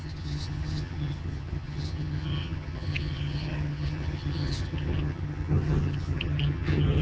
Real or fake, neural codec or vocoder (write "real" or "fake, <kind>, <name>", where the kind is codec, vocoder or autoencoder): fake, vocoder, HiFi-GAN